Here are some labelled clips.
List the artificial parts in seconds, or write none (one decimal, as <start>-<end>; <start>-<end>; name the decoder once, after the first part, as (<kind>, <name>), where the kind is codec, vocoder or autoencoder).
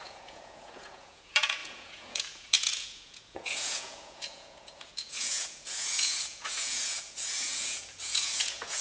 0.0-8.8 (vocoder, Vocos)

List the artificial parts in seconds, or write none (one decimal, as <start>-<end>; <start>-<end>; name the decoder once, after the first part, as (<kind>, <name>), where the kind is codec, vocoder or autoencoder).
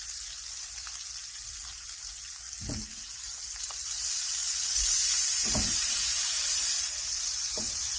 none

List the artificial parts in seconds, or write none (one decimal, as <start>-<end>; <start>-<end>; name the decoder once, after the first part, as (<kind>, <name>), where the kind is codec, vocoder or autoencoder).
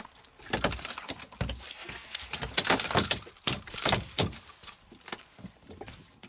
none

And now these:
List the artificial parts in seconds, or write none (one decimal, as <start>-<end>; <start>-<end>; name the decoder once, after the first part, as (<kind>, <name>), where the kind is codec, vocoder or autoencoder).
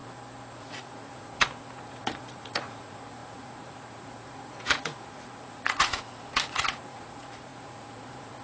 0.6-8.4 (vocoder, Vocos)